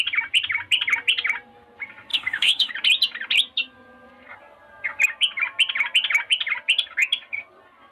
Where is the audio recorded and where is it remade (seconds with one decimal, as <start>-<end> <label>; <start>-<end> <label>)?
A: 0.0-2.1 recorded; 2.1-2.7 remade; 2.7-7.9 recorded